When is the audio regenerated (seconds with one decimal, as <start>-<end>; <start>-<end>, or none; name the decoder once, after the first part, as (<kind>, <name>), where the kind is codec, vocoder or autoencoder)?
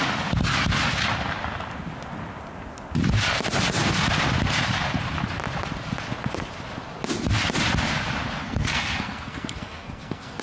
8.4-10.4 (codec, SNAC)